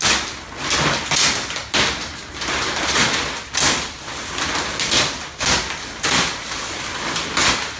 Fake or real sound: real